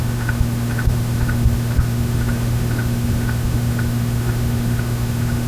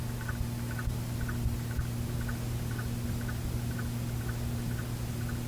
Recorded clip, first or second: second